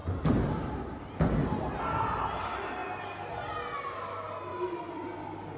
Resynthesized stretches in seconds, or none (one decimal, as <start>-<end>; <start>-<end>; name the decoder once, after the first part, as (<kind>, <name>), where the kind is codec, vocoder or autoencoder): none